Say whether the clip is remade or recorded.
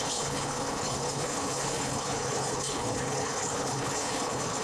remade